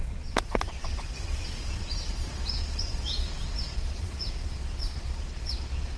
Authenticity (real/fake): fake